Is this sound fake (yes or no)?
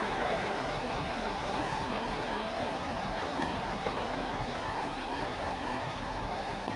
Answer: yes